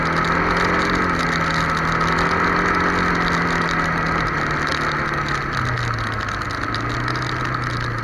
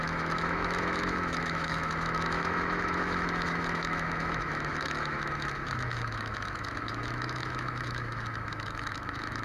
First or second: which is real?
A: first